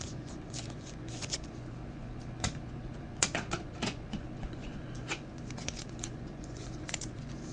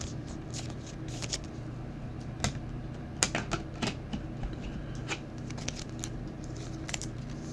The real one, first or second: second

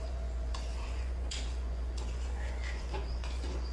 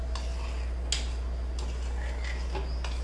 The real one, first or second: second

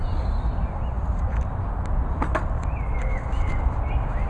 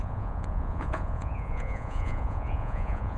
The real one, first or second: first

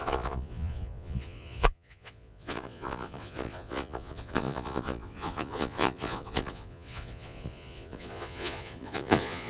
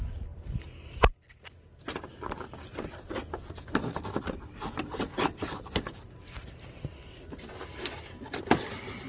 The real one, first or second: second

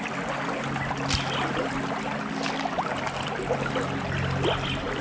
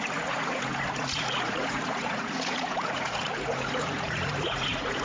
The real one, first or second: first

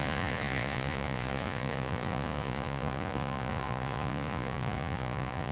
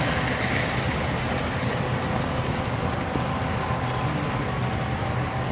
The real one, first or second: second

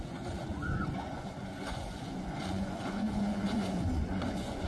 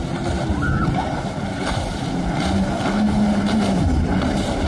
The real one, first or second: second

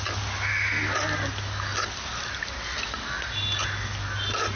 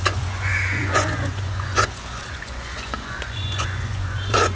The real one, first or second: first